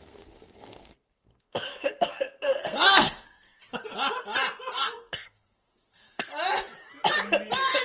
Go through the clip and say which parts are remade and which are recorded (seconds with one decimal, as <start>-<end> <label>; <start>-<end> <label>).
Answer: 0.0-3.6 remade; 3.6-4.7 recorded; 4.7-6.3 remade; 6.3-7.8 recorded